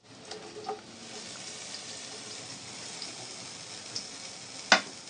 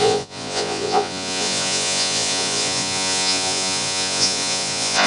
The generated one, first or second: second